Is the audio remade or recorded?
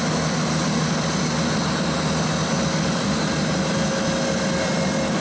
recorded